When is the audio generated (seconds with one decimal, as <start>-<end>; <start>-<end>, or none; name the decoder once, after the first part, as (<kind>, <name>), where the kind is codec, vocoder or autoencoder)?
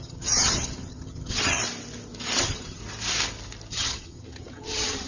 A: 0.0-1.6 (vocoder, HiFi-GAN); 2.4-2.8; 3.7-5.1